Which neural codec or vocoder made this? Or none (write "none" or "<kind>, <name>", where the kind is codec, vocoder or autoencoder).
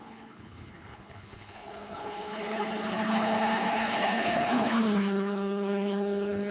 codec, HILCodec